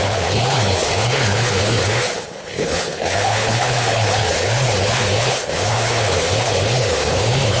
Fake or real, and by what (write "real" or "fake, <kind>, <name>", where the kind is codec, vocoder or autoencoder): fake, codec, HILCodec